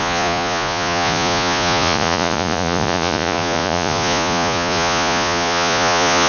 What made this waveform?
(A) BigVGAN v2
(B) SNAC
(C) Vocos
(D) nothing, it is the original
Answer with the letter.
C